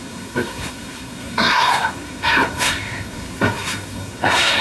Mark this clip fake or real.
fake